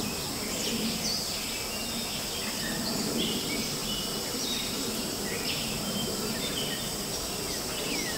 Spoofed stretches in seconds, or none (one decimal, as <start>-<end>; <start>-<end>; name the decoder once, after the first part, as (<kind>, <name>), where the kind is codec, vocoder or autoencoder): 3.8-6.1 (vocoder, BigVGAN v2)